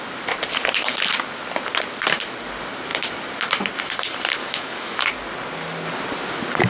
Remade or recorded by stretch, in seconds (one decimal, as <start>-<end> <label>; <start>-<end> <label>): 0.0-4.4 recorded; 4.4-5.0 remade; 5.0-6.7 recorded